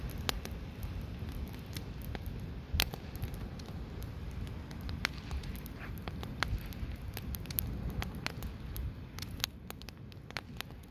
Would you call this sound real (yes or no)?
yes